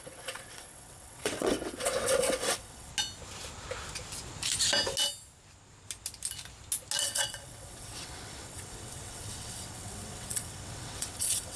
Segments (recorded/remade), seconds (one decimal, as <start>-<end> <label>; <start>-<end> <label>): 0.0-2.9 remade; 2.9-7.0 recorded; 7.0-11.6 remade

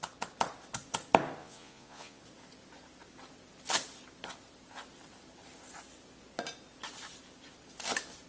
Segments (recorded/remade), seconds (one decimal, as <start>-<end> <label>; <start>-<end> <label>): 0.0-1.4 recorded; 1.4-2.2 remade; 2.2-8.3 recorded